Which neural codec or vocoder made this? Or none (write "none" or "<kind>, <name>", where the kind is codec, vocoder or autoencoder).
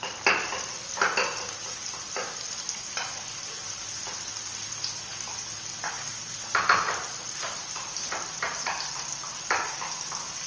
none